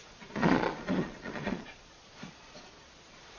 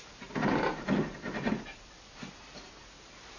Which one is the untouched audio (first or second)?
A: second